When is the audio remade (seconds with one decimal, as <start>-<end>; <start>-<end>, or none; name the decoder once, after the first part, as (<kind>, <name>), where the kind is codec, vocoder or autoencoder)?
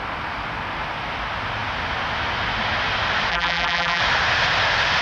3.3-4.0 (vocoder, BigVGAN v2)